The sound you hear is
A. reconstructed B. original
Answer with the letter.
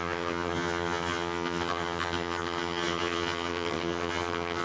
A